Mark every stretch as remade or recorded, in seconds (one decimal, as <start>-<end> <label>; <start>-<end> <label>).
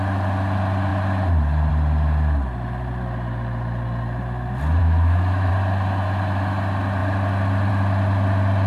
0.0-4.8 recorded; 4.8-5.5 remade; 5.5-8.7 recorded